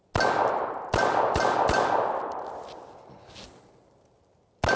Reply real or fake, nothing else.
real